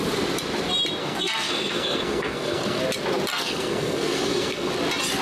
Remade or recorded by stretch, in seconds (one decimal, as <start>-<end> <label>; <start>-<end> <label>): 0.0-1.0 recorded; 1.0-2.8 remade; 2.8-3.3 recorded; 3.3-4.7 remade; 4.7-5.2 recorded